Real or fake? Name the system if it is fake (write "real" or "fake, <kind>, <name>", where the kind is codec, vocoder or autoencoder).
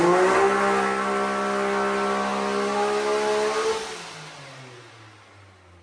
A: real